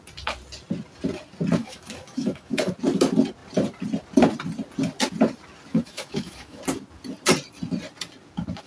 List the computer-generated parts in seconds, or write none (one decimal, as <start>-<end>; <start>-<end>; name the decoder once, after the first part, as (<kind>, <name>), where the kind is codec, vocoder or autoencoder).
1.6-2.7 (autoencoder, DAC-VAE); 5.7-6.6